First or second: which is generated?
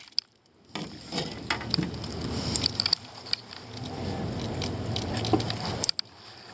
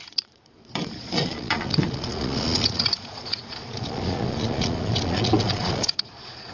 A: second